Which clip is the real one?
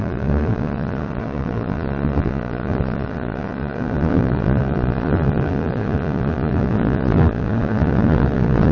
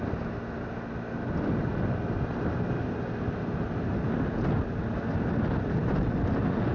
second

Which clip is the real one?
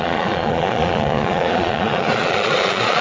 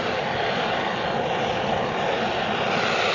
second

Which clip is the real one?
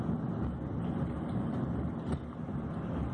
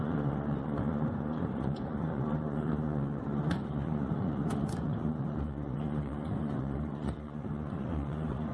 first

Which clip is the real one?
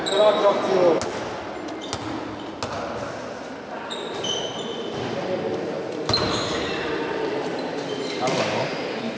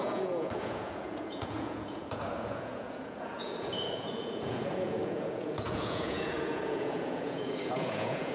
first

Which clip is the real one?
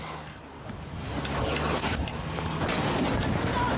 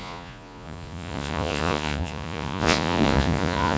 first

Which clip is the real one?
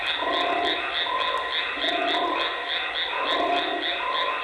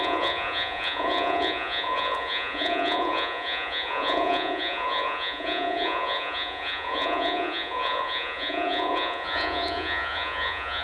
first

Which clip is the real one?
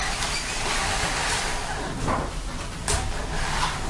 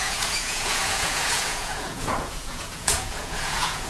first